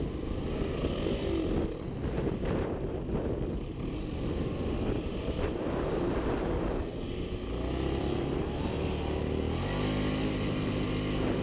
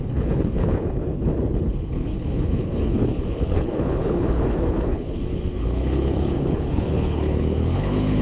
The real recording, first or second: first